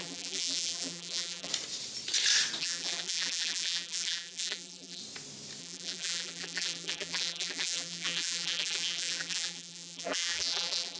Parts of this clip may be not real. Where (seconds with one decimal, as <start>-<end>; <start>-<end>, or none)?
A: 0.0-1.5; 2.6-5.0; 5.6-11.0